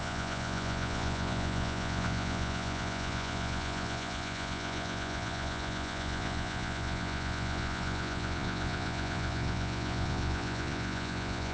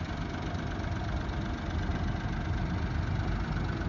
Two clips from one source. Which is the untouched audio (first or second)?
second